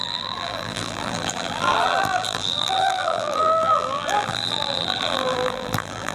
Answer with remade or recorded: remade